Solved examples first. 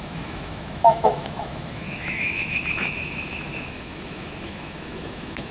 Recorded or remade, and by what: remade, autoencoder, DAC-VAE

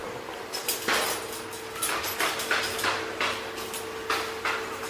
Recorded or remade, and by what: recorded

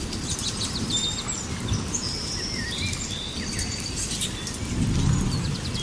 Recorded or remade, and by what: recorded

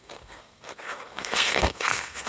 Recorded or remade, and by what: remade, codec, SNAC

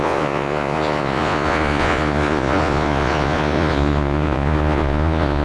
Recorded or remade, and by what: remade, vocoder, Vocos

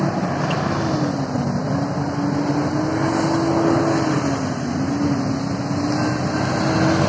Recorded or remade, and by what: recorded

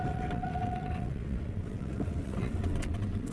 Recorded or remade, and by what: remade, vocoder, WaveNeXt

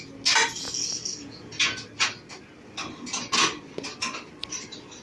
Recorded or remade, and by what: recorded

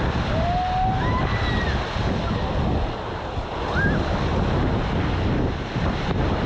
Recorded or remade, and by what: recorded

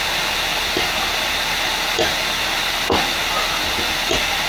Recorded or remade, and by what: recorded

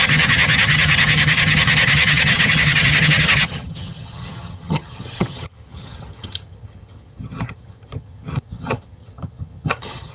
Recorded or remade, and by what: remade, vocoder, HiFi-GAN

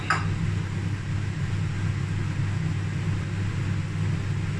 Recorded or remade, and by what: recorded